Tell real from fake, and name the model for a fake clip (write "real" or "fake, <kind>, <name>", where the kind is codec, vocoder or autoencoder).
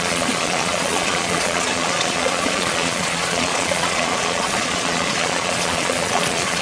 fake, vocoder, Vocos